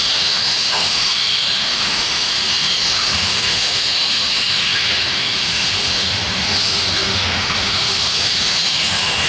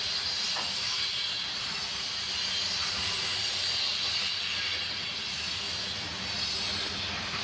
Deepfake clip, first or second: first